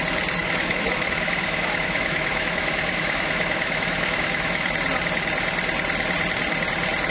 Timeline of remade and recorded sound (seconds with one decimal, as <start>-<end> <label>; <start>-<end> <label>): 0.0-0.4 recorded; 0.4-4.7 remade; 4.7-7.1 recorded

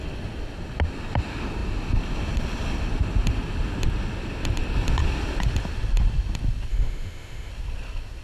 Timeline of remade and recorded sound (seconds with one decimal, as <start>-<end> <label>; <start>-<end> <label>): 0.0-6.7 recorded; 6.7-7.5 remade; 7.5-8.2 recorded

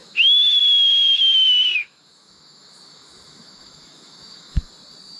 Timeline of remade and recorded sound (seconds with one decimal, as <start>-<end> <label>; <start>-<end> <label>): 0.0-0.6 remade; 0.6-1.8 recorded; 1.8-4.7 remade; 4.7-5.2 recorded